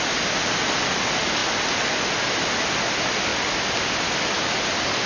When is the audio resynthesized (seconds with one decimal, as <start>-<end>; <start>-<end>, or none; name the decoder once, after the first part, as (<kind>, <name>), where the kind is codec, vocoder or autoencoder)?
none